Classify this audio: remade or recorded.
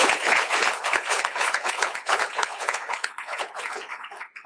remade